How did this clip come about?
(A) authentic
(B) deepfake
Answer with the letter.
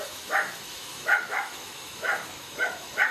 B